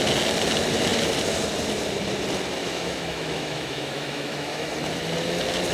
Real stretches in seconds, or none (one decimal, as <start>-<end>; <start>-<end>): 0.0-2.6; 4.7-5.7